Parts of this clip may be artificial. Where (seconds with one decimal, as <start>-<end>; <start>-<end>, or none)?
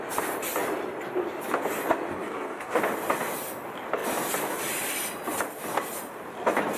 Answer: 2.1-2.8